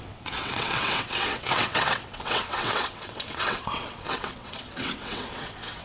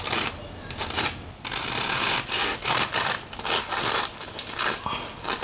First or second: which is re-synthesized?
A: first